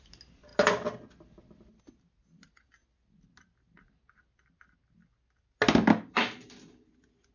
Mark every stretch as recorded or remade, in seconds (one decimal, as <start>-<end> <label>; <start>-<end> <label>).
0.0-7.3 recorded